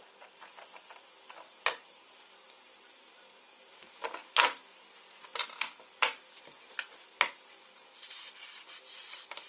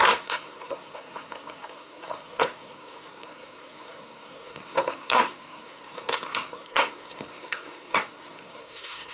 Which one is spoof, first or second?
second